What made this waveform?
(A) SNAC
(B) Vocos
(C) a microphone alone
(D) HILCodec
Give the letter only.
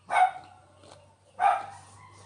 C